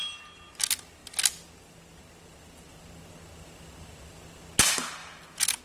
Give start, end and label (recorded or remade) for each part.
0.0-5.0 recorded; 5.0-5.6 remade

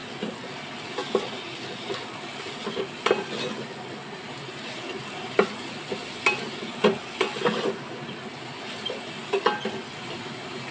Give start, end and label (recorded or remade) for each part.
0.0-10.7 recorded

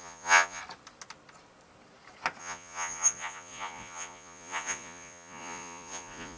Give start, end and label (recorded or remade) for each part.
0.0-0.6 remade; 0.6-2.4 recorded; 2.4-6.4 remade